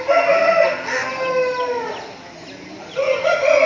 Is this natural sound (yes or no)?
yes